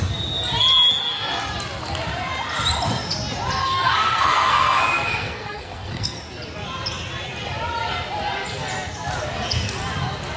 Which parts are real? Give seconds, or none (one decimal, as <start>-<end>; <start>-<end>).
0.0-3.6; 6.2-10.4

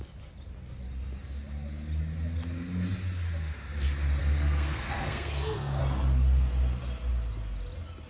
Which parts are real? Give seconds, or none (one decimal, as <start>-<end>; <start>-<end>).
0.0-4.2; 5.8-8.1

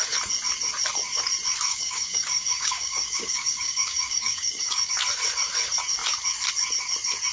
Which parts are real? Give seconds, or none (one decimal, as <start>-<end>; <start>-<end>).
0.0-1.7; 4.9-7.3

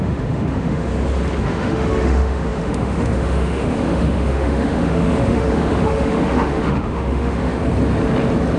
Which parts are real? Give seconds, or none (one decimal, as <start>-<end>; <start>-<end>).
0.9-1.4; 7.6-8.6

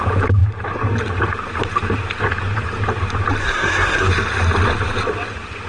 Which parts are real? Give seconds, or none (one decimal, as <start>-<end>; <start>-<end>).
0.0-3.4; 4.1-5.7